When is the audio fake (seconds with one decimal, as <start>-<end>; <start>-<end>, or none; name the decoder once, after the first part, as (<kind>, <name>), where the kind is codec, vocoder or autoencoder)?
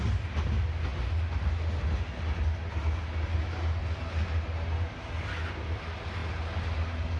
none